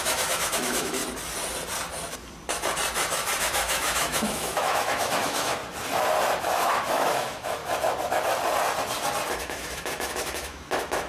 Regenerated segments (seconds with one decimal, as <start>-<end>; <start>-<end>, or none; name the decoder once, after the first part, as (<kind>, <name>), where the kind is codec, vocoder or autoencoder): 0.0-1.0 (autoencoder, DAC-VAE); 3.4-5.6; 6.4-7.6; 9.3-11.1